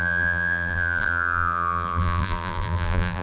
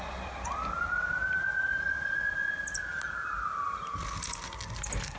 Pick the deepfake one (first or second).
first